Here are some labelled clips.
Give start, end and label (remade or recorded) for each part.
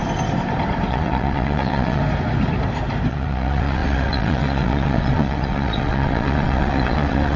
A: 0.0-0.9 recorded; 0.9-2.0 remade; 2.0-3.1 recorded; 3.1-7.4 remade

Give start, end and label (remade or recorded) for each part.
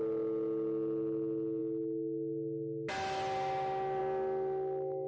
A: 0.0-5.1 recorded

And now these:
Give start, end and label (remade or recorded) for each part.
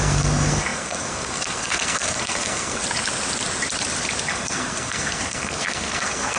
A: 0.0-2.8 remade; 2.8-4.3 recorded; 4.3-6.4 remade